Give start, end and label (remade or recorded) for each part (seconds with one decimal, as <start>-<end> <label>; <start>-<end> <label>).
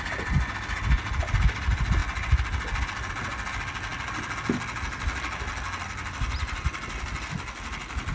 0.0-8.1 recorded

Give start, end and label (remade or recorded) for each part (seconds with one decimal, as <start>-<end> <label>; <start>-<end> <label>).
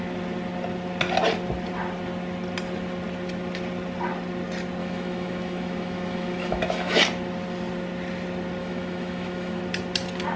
0.0-4.8 recorded; 4.8-7.0 remade; 7.0-8.6 recorded; 8.6-9.6 remade; 9.6-10.4 recorded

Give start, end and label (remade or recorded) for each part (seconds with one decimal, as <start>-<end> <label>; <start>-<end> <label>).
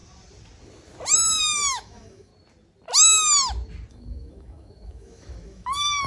0.0-1.4 recorded; 1.4-2.3 remade; 2.3-3.9 recorded; 3.9-6.1 remade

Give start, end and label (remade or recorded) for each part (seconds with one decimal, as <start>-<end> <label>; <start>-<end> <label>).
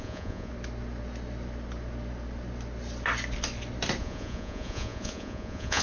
0.0-0.5 remade; 0.5-4.0 recorded; 4.0-5.8 remade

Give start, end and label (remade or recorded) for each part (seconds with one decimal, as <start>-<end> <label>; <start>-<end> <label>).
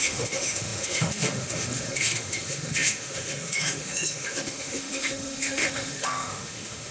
0.0-6.9 remade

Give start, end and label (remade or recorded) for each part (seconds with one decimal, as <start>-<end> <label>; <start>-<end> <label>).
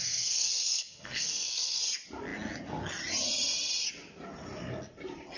0.0-1.8 remade; 1.8-5.4 recorded